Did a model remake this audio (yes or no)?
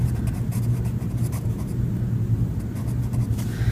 no